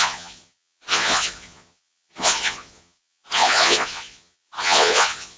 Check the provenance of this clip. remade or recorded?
remade